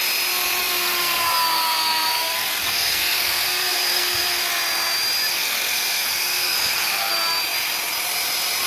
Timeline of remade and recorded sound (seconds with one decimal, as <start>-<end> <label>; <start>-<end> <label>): 0.0-0.6 recorded; 0.6-4.5 remade; 4.5-5.3 recorded; 5.3-7.1 remade; 7.1-8.7 recorded